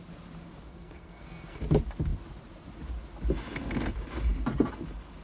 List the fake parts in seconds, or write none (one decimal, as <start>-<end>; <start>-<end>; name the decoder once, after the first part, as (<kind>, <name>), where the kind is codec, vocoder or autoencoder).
0.7-1.6 (codec, SNAC)